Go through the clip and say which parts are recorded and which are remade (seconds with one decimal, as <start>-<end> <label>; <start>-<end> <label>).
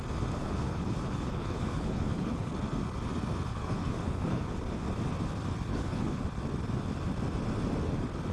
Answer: 0.0-0.4 recorded; 0.4-2.5 remade; 2.5-3.5 recorded; 3.5-4.6 remade; 4.6-5.7 recorded; 5.7-6.2 remade; 6.2-8.3 recorded